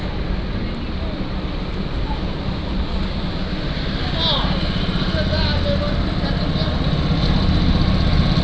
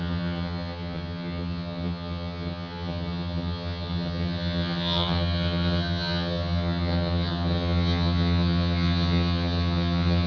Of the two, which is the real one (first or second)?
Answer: first